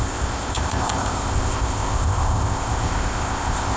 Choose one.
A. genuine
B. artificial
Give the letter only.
B